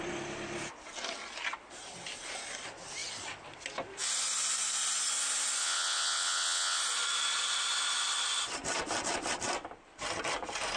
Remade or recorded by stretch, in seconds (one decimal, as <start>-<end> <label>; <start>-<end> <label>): 0.0-5.6 recorded; 5.6-6.8 remade; 6.8-10.8 recorded